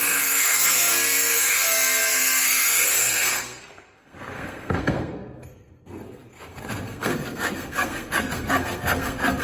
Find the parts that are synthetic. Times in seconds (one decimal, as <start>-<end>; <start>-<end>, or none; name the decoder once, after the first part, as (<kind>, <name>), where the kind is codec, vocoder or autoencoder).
0.0-9.4 (codec, SNAC)